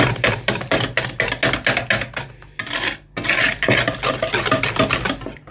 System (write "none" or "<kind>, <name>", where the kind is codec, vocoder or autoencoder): none